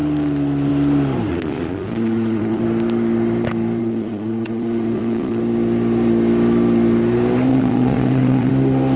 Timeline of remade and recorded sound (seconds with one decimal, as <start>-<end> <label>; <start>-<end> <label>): 0.0-1.3 recorded; 1.3-2.6 remade; 2.6-3.8 recorded; 3.8-5.4 remade; 5.4-7.5 recorded; 7.5-8.5 remade; 8.5-9.0 recorded